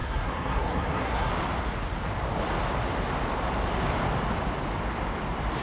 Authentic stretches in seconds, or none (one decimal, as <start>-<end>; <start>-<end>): 1.3-5.6